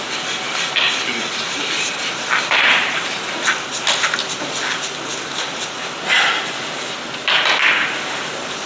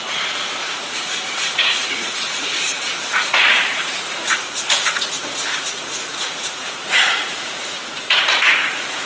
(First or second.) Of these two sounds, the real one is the first